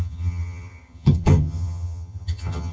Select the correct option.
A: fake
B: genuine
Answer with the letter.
A